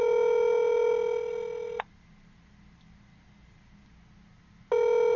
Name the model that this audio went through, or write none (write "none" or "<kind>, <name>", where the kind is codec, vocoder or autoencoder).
none